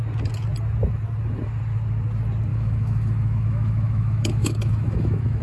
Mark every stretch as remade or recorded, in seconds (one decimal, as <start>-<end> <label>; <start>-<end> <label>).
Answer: 0.0-2.5 recorded; 2.5-5.4 remade